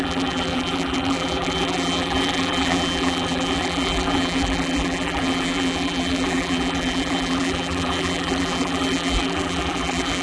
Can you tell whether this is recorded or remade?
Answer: remade